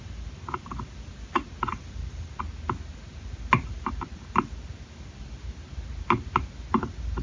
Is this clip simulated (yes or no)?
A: no